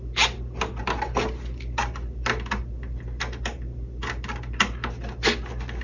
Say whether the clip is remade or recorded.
recorded